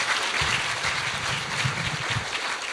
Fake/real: fake